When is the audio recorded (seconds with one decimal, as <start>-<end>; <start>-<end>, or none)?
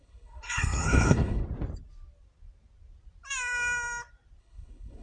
1.4-4.4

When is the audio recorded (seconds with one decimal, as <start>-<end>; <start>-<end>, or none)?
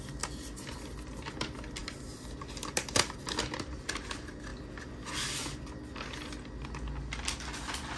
0.0-8.0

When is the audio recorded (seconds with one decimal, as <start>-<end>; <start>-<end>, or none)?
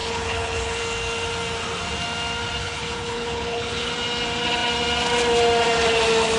0.8-2.6; 3.9-6.4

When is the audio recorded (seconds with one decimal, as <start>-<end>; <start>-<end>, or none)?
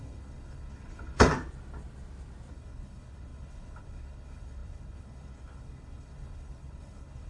1.3-2.5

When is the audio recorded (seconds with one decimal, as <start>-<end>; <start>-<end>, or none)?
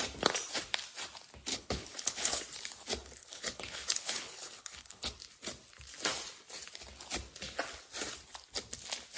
0.0-1.5; 2.4-3.2; 5.1-9.2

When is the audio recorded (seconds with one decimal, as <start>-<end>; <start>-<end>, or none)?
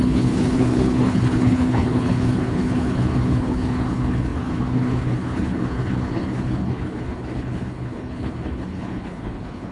none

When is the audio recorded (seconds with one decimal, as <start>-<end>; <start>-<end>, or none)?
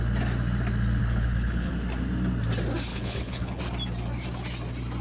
0.0-1.0; 1.7-2.9; 3.6-5.0